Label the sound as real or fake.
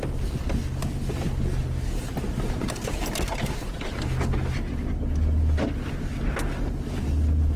real